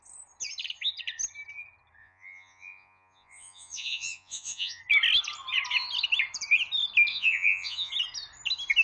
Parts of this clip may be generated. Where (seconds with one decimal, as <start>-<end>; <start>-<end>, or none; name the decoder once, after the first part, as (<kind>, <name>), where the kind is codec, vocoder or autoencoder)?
2.0-4.8 (vocoder, Vocos); 7.1-7.9